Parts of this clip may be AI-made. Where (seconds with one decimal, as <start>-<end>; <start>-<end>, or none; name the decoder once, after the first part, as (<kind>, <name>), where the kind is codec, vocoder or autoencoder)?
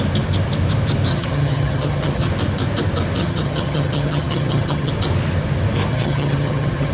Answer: 1.1-2.3 (vocoder, HiFi-GAN); 3.2-4.9; 5.9-6.9